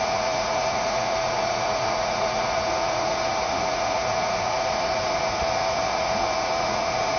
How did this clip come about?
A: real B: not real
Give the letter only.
B